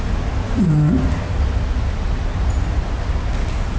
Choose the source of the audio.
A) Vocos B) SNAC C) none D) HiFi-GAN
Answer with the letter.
C